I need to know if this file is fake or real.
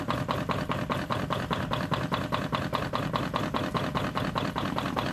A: fake